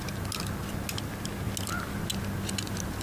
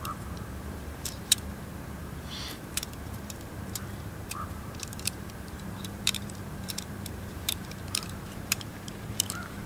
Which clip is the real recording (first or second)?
first